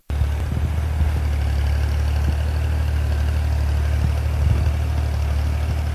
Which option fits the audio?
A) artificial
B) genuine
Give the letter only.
B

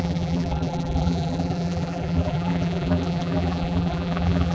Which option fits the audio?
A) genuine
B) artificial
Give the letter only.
B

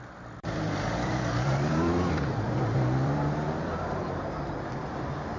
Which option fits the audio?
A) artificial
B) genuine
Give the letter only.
A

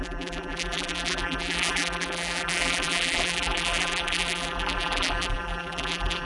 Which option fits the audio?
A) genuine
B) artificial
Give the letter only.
B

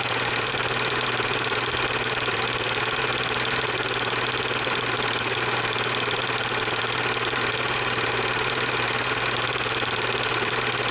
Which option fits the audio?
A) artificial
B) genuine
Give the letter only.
A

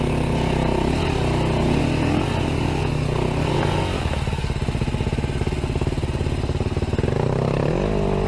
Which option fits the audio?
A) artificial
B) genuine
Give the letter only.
B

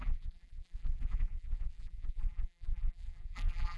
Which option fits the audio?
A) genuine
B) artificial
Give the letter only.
B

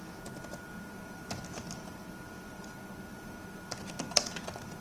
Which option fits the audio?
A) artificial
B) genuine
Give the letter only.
B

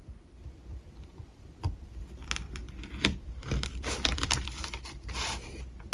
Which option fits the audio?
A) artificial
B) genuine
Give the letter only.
A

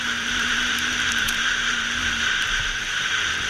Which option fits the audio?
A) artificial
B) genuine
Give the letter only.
A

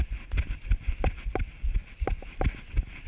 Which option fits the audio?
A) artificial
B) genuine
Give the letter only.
A